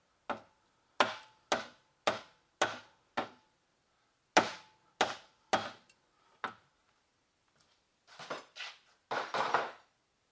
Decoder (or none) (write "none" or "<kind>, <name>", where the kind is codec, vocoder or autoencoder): none